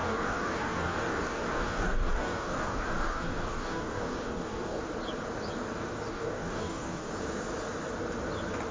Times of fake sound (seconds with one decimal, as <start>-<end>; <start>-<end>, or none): 0.0-4.8; 6.1-7.1